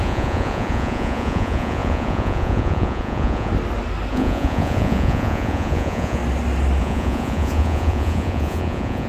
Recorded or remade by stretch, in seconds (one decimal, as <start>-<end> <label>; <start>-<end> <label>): 0.0-3.5 remade; 3.5-4.1 recorded; 4.1-6.2 remade; 6.2-6.8 recorded; 6.8-9.1 remade